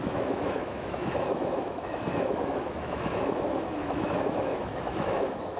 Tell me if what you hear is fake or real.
fake